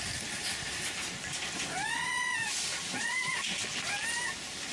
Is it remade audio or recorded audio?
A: recorded